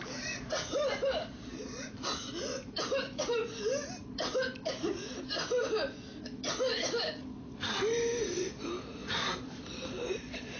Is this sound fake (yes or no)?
yes